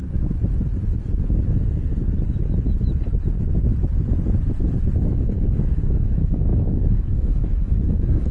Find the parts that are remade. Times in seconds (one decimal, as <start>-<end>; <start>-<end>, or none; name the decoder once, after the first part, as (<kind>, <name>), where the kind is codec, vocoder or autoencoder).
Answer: 5.0-8.3 (codec, DAC)

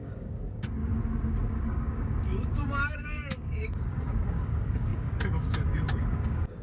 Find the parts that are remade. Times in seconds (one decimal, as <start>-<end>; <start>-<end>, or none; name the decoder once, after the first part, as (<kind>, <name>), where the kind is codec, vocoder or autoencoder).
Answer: 0.0-0.8 (codec, DAC); 1.5-6.6

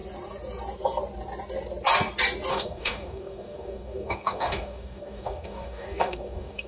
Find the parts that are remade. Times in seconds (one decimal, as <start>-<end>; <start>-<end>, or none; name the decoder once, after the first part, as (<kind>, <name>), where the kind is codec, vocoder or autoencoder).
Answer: 2.5-6.7 (codec, DAC)

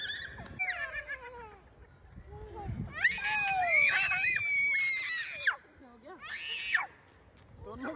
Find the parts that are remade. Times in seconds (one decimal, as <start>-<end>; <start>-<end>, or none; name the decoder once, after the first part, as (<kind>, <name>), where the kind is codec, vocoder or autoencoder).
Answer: 3.6-4.4 (codec, DAC)